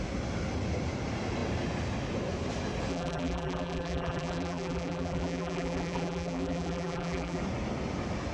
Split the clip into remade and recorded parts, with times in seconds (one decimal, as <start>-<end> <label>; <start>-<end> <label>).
0.0-2.9 recorded; 2.9-7.4 remade; 7.4-8.3 recorded